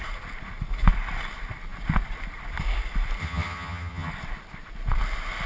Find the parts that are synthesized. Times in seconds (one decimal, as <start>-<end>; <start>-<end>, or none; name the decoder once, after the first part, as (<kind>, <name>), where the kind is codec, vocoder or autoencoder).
3.2-4.1 (vocoder, HiFi-GAN)